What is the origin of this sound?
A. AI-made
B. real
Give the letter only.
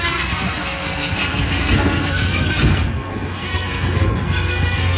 A